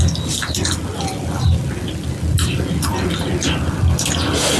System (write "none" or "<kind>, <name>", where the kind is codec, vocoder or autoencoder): none